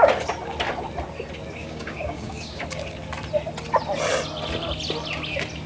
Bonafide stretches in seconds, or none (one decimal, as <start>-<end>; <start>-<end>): 0.0-1.6; 2.6-5.7